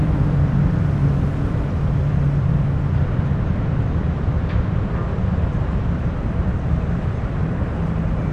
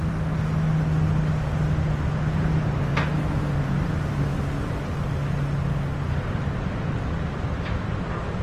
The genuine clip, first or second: second